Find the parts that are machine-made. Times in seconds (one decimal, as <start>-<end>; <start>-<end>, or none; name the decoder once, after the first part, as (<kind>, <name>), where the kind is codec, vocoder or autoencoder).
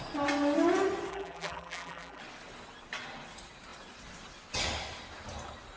1.1-2.2 (vocoder, BigVGAN v2)